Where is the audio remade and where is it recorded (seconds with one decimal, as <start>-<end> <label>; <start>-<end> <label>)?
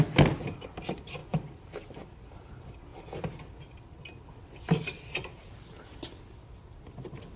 0.0-7.4 recorded